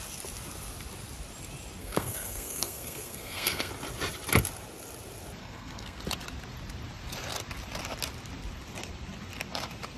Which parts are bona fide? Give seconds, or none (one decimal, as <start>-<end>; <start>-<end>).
0.0-1.8; 3.7-5.4; 6.0-10.0